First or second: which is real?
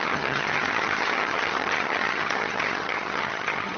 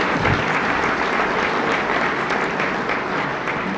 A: second